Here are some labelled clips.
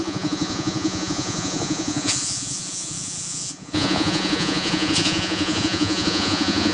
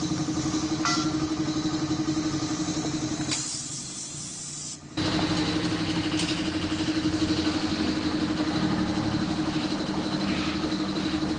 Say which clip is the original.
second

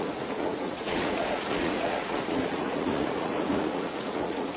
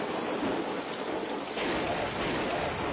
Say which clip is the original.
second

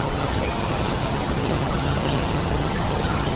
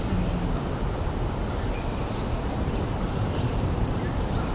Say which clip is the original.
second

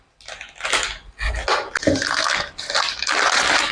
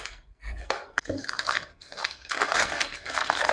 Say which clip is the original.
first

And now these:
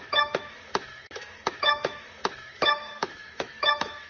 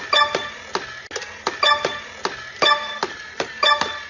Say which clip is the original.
second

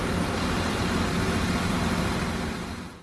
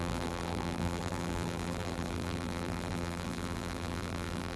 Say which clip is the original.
first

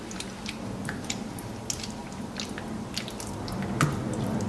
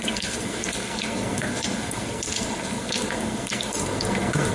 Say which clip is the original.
first